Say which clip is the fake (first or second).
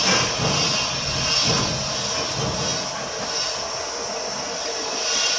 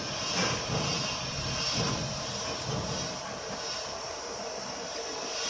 second